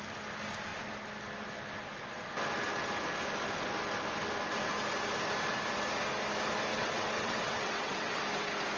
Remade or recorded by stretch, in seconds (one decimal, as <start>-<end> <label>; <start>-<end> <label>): 0.0-6.7 recorded; 6.7-8.2 remade; 8.2-8.8 recorded